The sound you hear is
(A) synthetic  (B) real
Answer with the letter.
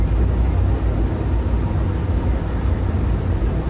B